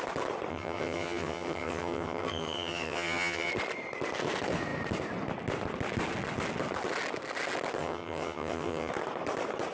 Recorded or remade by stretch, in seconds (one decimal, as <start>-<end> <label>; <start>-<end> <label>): 0.0-0.5 recorded; 0.5-3.5 remade; 3.5-7.8 recorded; 7.8-8.9 remade; 8.9-9.7 recorded